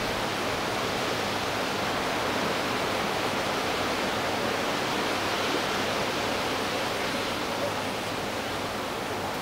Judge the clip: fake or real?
real